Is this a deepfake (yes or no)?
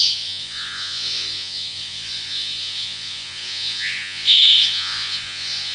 yes